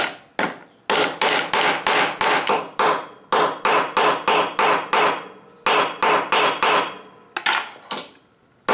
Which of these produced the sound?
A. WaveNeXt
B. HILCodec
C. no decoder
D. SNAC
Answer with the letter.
C